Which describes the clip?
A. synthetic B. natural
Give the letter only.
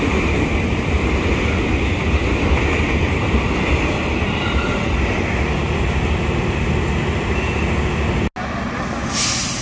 B